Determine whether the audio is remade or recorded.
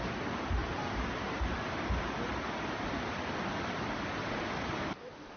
recorded